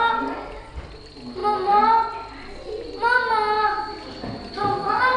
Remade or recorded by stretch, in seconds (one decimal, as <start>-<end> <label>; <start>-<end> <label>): 0.0-5.2 recorded

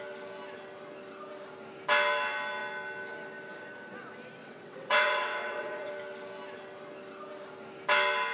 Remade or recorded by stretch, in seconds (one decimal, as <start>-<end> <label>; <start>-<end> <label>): 0.0-4.4 recorded; 4.4-5.9 remade; 5.9-8.3 recorded

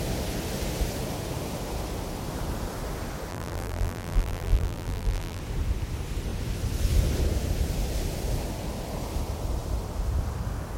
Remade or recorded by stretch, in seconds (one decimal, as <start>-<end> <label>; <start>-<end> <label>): 0.0-3.3 recorded; 3.3-5.4 remade; 5.4-10.8 recorded

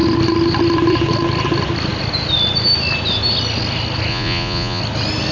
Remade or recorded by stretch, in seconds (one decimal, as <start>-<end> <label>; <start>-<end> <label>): 0.0-4.1 recorded; 4.1-4.8 remade; 4.8-5.3 recorded

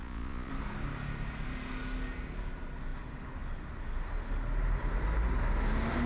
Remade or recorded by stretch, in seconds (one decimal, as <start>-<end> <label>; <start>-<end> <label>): 0.0-0.5 remade; 0.5-6.1 recorded

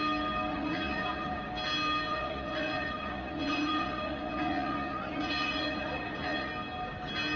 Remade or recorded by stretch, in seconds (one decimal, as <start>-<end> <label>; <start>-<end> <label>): 0.0-0.5 recorded; 0.5-1.4 remade; 1.4-2.1 recorded; 2.1-6.5 remade; 6.5-7.4 recorded